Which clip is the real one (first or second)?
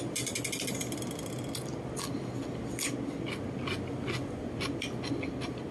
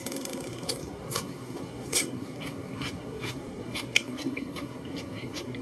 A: first